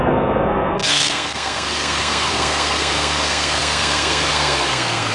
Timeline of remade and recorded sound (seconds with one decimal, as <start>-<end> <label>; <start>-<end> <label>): 0.0-5.1 remade